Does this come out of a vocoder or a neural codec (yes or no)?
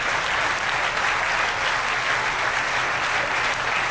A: no